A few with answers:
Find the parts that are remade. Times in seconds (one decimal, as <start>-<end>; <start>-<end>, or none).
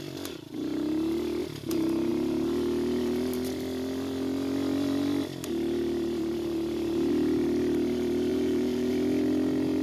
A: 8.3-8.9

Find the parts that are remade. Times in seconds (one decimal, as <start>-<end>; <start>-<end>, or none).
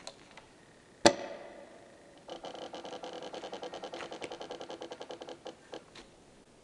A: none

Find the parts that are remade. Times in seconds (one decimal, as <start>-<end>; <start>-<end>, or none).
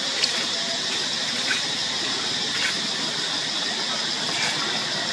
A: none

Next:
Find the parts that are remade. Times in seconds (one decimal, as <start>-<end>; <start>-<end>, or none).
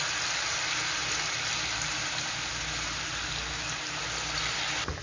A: none